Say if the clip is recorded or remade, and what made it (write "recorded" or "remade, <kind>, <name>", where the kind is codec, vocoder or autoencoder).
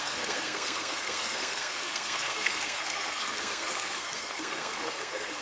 remade, codec, SNAC